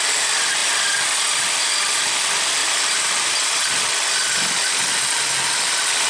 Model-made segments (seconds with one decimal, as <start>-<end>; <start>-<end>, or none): 2.6-3.7

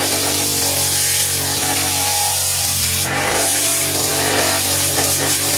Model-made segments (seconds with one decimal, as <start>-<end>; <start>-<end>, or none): 0.0-0.5; 1.6-5.6

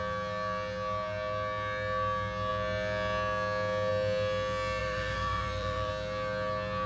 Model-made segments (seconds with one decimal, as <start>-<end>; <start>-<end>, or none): 4.8-5.9

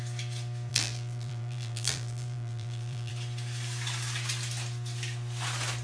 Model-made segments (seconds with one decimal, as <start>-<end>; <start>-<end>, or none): 0.7-3.1

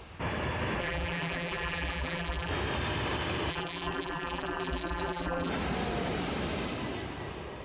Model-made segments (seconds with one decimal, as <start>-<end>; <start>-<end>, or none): 0.8-2.5; 3.5-5.5